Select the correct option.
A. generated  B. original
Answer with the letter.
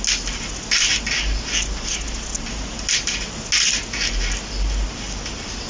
B